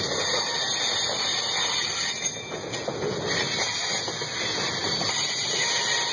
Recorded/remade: recorded